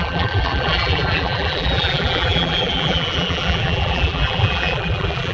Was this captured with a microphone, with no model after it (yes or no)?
no